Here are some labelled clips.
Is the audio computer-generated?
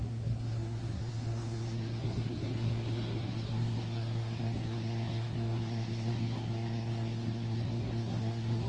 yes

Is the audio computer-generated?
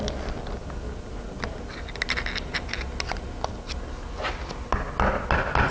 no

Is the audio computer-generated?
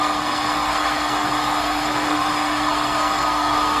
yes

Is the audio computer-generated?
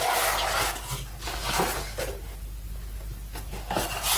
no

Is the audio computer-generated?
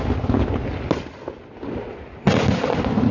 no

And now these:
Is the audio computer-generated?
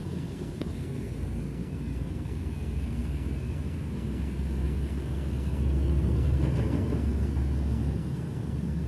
yes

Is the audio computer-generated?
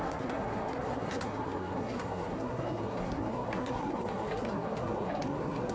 yes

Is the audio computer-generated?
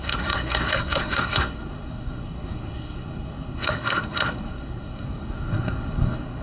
yes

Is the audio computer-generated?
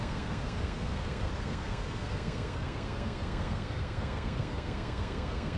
yes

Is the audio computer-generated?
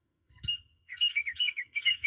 yes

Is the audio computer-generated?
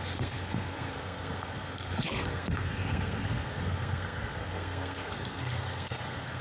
yes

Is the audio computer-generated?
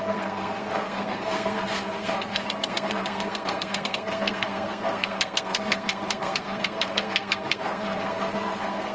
yes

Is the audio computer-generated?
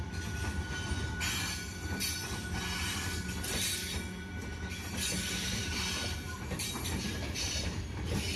no